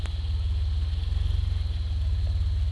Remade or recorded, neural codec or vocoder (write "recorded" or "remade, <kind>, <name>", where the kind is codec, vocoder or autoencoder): recorded